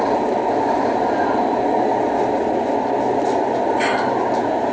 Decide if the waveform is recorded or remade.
recorded